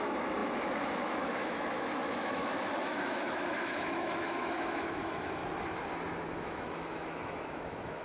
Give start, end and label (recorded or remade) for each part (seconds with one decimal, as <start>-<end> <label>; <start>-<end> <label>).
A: 0.0-5.4 remade; 5.4-6.4 recorded; 6.4-8.0 remade